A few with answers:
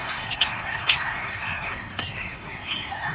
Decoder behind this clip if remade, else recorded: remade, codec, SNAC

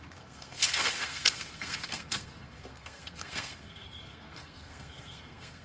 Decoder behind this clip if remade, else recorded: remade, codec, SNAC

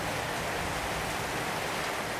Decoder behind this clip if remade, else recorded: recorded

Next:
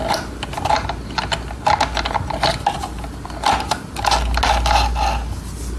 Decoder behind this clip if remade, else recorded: recorded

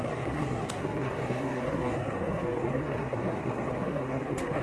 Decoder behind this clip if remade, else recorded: remade, codec, SNAC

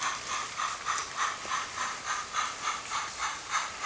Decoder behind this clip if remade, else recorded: recorded